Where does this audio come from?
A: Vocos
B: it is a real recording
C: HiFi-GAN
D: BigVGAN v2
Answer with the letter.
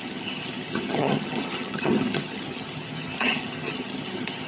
C